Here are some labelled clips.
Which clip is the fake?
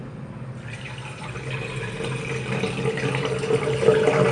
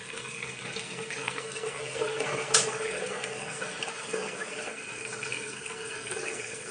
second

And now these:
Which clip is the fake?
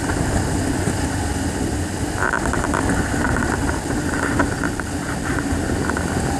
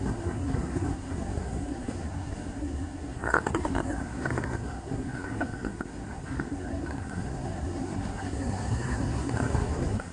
second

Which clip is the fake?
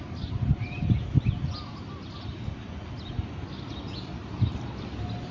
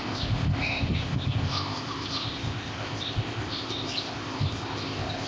second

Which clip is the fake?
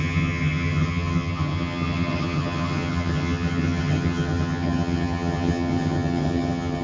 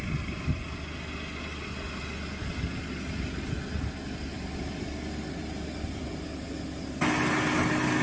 first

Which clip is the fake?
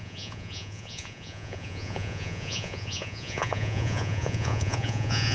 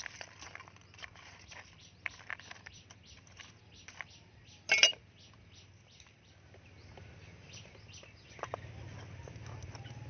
first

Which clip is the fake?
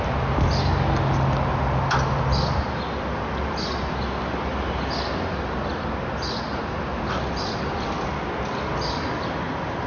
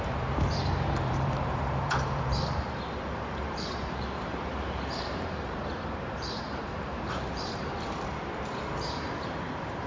second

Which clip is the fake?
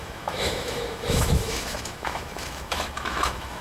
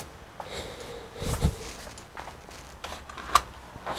first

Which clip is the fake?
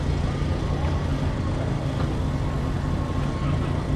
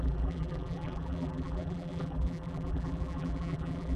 second